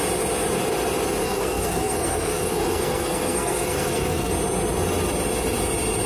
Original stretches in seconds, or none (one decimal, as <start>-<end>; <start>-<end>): 0.0-1.2; 4.3-6.1